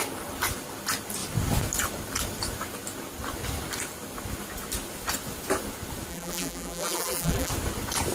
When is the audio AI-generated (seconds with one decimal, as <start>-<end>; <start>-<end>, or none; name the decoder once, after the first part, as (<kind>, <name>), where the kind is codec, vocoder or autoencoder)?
6.1-7.5 (vocoder, BigVGAN v2)